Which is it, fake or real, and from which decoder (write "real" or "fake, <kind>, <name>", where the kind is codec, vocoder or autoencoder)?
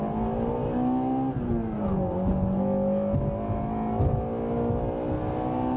real